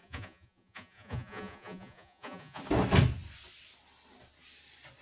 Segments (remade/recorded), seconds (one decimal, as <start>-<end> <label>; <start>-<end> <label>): 0.0-2.6 remade; 2.6-5.0 recorded